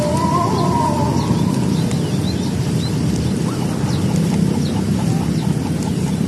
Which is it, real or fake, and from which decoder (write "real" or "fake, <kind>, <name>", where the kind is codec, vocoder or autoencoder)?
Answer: real